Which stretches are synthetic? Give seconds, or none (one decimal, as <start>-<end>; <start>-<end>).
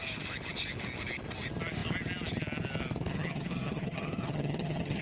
3.1-5.0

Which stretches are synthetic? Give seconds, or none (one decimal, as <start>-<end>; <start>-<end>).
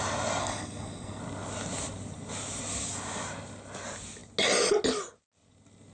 0.4-1.2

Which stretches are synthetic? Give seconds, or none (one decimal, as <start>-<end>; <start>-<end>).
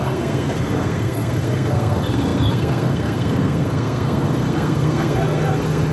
0.0-5.9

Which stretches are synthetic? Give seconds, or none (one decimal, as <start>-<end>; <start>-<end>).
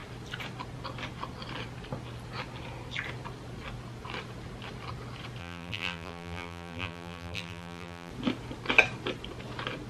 5.4-8.1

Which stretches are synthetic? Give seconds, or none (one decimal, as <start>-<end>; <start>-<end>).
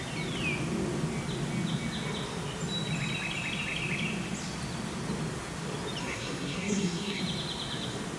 6.0-7.2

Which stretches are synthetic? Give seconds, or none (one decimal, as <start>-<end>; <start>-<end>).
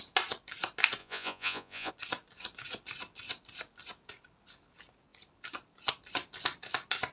1.0-1.9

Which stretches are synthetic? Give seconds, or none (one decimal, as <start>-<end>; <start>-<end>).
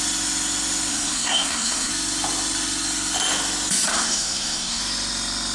0.9-1.9; 3.9-4.8